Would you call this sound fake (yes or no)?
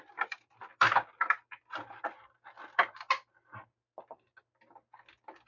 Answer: no